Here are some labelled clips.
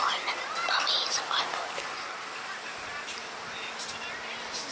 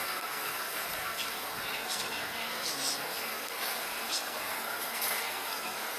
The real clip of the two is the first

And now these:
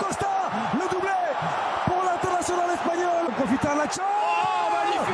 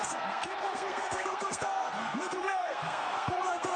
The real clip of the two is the first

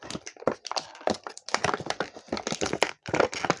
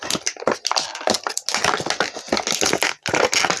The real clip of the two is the second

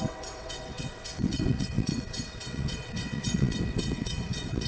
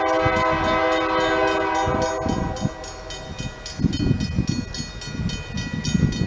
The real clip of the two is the second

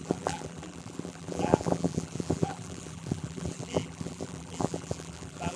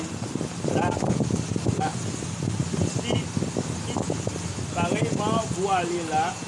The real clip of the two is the second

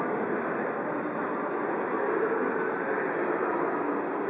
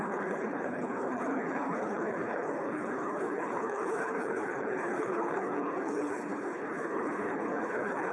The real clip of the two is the first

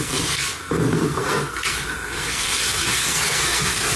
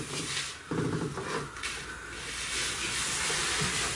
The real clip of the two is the second